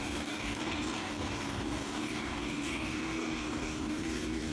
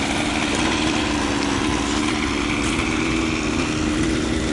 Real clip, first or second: second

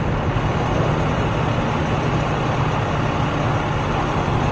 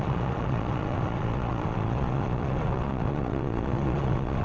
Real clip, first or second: first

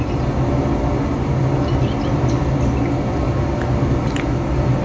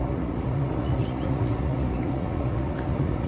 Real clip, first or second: first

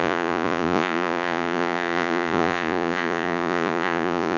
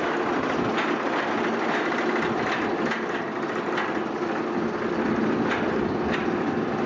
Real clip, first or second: second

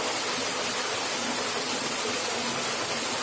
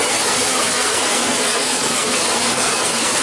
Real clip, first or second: first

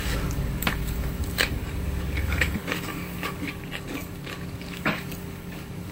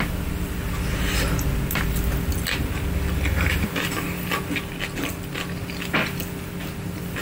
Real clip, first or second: second